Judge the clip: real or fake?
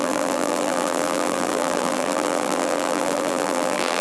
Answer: fake